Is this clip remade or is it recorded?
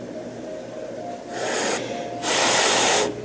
recorded